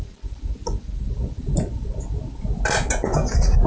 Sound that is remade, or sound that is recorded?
recorded